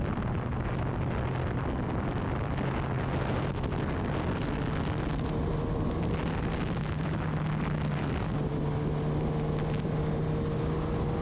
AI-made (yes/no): no